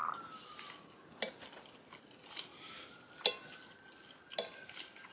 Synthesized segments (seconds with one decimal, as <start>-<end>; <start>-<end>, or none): 2.5-3.8

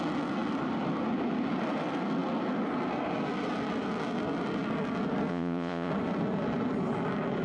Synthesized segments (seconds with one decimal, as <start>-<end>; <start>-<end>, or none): 5.3-5.9

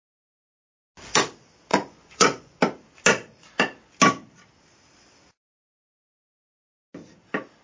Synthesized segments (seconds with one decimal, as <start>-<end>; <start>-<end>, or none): 1.7-2.6

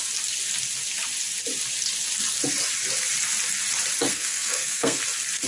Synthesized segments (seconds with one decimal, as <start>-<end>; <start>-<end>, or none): 4.1-5.0

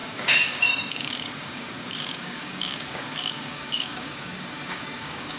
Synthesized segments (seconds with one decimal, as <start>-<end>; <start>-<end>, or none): 0.0-5.4

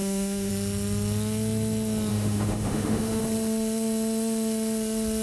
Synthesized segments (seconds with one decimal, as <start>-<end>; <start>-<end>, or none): 0.0-0.5; 2.1-3.2

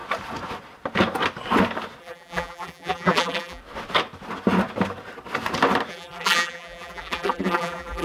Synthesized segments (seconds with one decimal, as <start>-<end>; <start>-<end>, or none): 2.0-3.6; 5.9-8.0